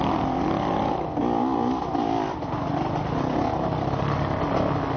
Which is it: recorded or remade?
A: recorded